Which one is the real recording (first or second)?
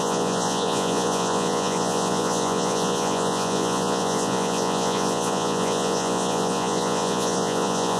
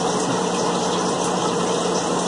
second